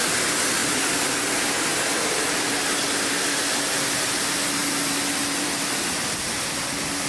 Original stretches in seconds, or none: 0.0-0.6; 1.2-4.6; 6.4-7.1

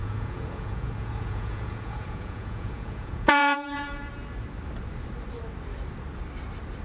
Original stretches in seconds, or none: 4.1-6.8

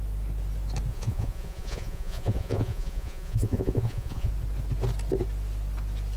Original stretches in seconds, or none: 0.0-0.9; 4.3-6.2

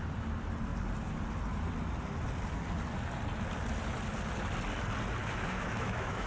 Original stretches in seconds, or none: 0.0-5.2

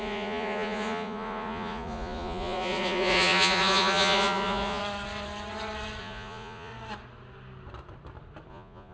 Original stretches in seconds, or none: 4.8-6.0; 6.7-8.5